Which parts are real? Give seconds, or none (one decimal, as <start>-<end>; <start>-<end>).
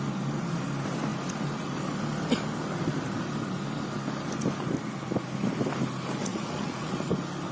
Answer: 0.0-6.2; 7.1-7.5